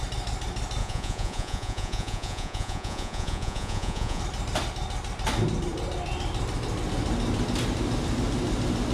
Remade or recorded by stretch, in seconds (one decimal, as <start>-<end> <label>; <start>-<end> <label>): 0.0-0.8 recorded; 0.8-4.2 remade; 4.2-8.9 recorded